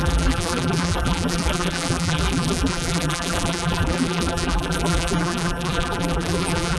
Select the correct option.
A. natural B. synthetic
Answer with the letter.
B